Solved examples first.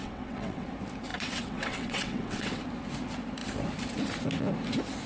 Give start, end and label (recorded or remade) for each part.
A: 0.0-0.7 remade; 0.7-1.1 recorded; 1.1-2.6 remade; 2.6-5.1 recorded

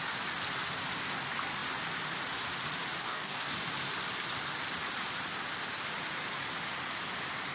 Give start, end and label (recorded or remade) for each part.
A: 0.0-3.0 recorded; 3.0-3.5 remade; 3.5-7.5 recorded

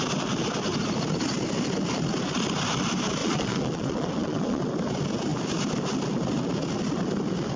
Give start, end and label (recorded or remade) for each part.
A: 0.0-3.2 recorded; 3.2-4.6 remade; 4.6-7.6 recorded

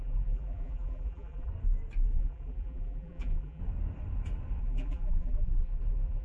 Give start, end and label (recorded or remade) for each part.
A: 0.0-1.5 remade; 1.5-2.1 recorded; 2.1-3.6 remade; 3.6-4.6 recorded; 4.6-6.2 remade

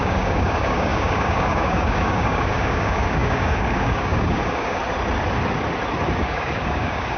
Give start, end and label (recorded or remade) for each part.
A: 0.0-4.8 remade; 4.8-6.2 recorded; 6.2-7.2 remade

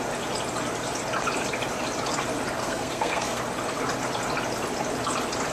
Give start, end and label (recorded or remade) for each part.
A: 0.0-2.6 recorded; 2.6-3.4 remade; 3.4-5.5 recorded

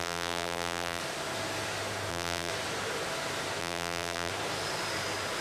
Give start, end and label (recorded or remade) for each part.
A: 0.0-1.0 remade; 1.0-2.1 recorded; 2.1-2.5 remade; 2.5-3.6 recorded; 3.6-4.3 remade; 4.3-5.4 recorded